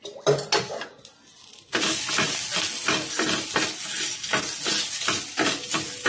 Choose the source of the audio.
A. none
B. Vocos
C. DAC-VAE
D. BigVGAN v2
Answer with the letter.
A